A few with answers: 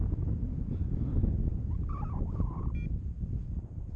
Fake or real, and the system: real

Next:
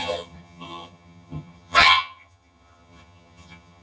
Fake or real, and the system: fake, vocoder, HiFi-GAN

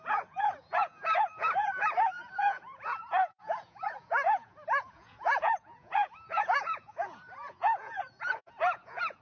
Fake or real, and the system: fake, vocoder, Vocos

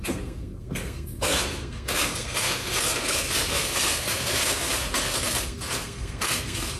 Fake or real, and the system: fake, codec, SNAC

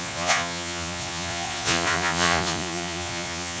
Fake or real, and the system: fake, vocoder, Vocos